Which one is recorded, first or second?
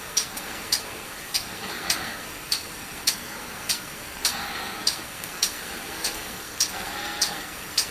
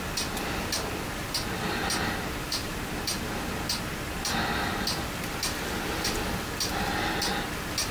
second